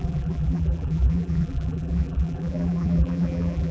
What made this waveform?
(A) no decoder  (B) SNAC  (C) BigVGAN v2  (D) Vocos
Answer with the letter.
C